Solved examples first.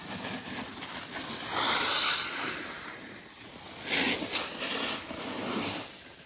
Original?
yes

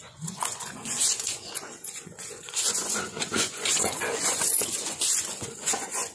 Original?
no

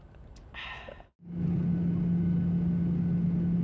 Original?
yes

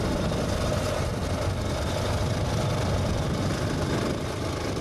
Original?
yes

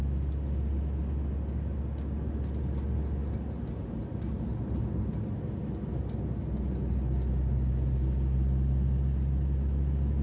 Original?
yes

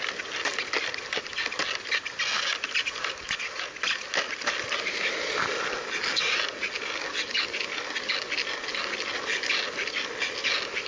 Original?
yes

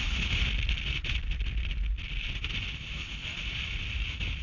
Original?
yes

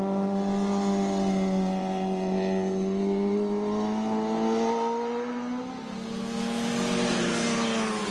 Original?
yes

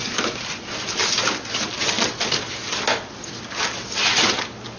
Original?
yes